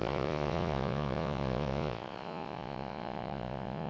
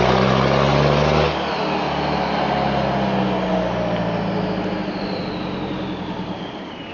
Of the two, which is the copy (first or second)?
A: first